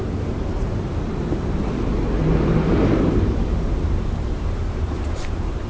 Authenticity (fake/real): fake